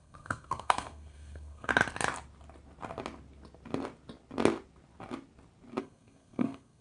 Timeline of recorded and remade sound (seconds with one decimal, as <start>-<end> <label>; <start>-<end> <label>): 0.0-1.7 remade; 1.7-5.8 recorded; 5.8-6.8 remade